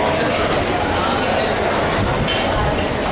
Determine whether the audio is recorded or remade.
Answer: recorded